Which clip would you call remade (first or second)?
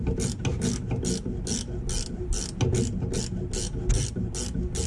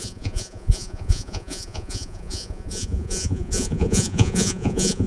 second